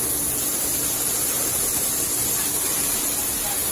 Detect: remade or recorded recorded